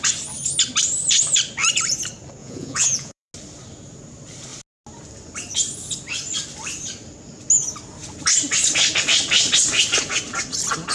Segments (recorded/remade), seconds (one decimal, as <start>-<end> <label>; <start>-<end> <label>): 0.0-2.4 recorded; 2.4-3.3 remade; 3.3-10.9 recorded

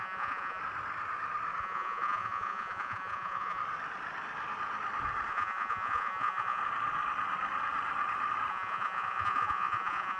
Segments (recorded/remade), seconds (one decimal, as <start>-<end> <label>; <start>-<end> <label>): 0.0-0.6 remade; 0.6-1.6 recorded; 1.6-3.6 remade; 3.6-5.3 recorded; 5.3-6.6 remade; 6.6-8.5 recorded; 8.5-10.2 remade